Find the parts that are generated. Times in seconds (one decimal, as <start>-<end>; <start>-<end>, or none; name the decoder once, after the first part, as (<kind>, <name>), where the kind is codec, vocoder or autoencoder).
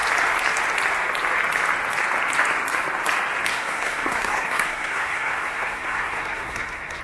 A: 3.5-7.0 (codec, SNAC)